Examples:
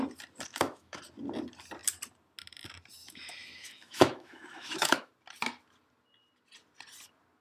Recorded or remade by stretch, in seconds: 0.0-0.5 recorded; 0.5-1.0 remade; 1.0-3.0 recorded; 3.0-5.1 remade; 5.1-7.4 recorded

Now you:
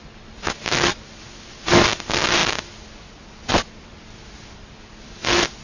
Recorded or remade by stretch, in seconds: 0.0-5.6 recorded

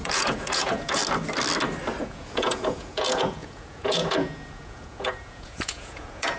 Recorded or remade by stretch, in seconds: 0.0-1.0 remade; 1.0-2.0 recorded; 2.0-6.4 remade

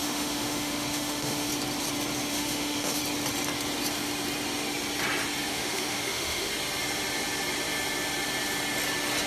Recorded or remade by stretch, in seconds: 0.0-1.5 remade; 1.5-2.3 recorded; 2.3-3.0 remade; 3.0-5.5 recorded; 5.5-6.5 remade; 6.5-9.3 recorded